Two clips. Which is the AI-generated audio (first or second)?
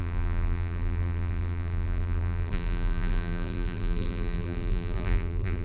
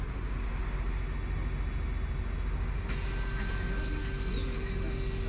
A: first